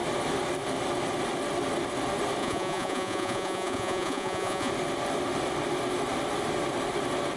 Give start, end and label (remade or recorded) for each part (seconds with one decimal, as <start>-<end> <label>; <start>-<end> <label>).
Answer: 0.0-2.4 recorded; 2.4-4.7 remade; 4.7-7.4 recorded